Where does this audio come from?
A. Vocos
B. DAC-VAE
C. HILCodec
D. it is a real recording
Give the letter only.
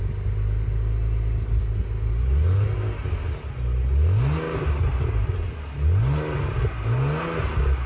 D